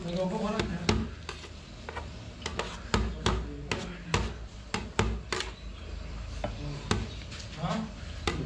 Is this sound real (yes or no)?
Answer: yes